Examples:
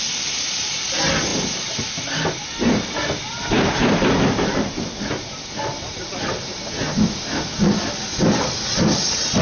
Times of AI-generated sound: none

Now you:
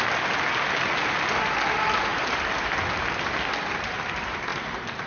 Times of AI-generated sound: none

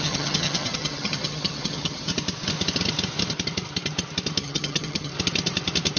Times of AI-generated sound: 0.0-2.1 (vocoder, HiFi-GAN); 4.4-5.1